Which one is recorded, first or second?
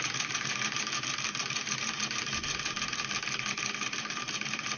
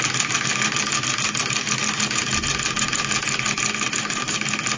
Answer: second